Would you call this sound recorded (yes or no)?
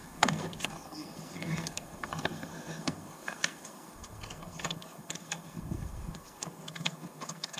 no